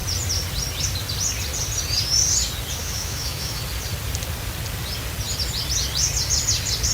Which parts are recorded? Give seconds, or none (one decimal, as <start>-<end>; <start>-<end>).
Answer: 0.0-2.8; 3.6-6.9